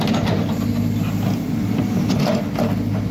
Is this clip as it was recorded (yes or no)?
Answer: yes